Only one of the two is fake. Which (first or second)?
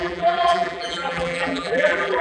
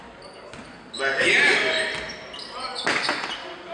first